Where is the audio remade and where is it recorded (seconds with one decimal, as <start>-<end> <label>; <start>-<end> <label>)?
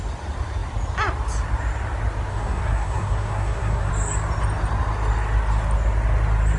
0.0-2.3 recorded; 2.3-3.9 remade; 3.9-6.6 recorded